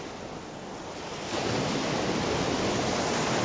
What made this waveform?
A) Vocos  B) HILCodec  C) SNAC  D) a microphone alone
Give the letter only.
D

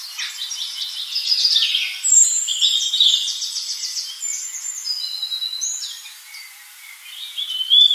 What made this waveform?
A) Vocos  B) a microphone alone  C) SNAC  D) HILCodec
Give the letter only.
B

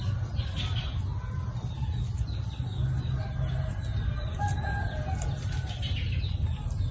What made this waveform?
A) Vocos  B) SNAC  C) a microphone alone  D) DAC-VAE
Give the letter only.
C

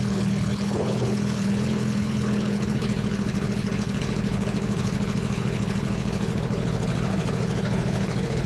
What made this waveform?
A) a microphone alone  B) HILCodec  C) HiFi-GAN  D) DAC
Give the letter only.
B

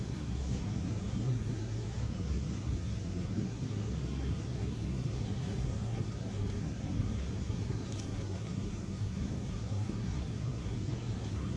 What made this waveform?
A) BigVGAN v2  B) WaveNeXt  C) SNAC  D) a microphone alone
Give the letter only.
C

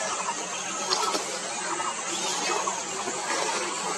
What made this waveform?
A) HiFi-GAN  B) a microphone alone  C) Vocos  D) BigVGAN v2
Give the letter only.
B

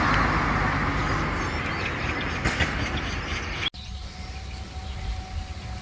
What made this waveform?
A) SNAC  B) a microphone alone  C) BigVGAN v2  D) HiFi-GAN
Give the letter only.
B